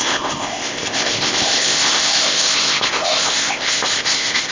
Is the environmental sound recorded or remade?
remade